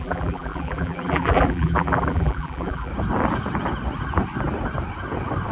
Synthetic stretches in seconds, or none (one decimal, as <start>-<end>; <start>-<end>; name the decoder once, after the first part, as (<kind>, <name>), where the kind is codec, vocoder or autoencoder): 0.0-2.9 (vocoder, BigVGAN v2)